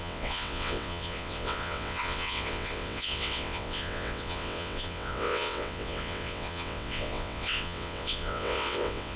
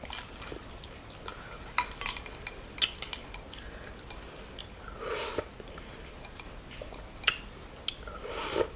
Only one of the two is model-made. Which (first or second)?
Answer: first